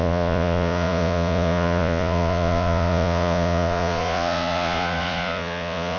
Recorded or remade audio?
remade